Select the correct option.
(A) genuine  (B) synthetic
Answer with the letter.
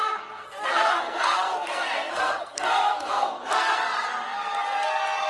B